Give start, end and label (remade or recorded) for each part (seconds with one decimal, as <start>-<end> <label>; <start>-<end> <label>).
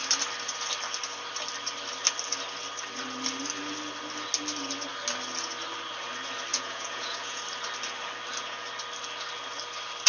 0.0-6.5 recorded; 6.5-7.4 remade; 7.4-10.1 recorded